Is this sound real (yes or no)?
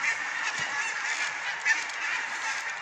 yes